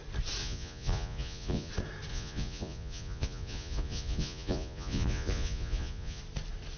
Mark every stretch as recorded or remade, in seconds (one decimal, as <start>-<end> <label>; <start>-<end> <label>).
0.0-0.4 recorded; 0.4-1.7 remade; 1.7-2.1 recorded; 2.1-6.2 remade; 6.2-6.8 recorded